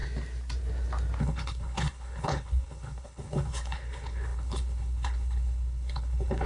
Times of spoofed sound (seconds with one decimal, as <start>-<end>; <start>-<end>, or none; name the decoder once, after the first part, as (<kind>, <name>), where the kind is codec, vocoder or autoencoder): 1.2-6.5 (codec, HILCodec)